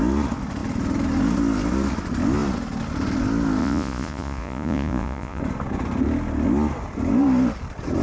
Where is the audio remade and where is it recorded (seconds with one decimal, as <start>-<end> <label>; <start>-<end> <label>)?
0.0-3.6 recorded; 3.6-5.4 remade; 5.4-8.0 recorded